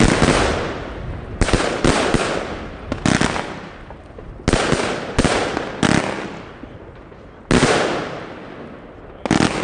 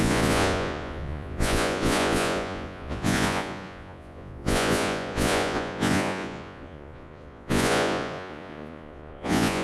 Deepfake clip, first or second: second